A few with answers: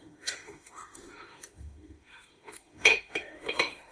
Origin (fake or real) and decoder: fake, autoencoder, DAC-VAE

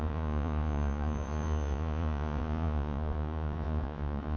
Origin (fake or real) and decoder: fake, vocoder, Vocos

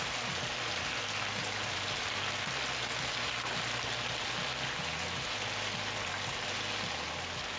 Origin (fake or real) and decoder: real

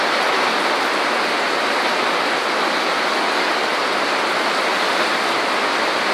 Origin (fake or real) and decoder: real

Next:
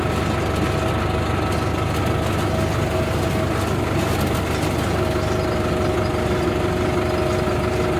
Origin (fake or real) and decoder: real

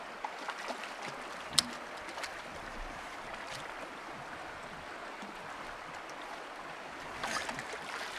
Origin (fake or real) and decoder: real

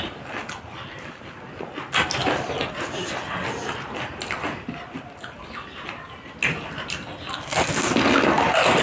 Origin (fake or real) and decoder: real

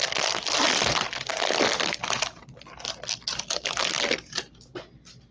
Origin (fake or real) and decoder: real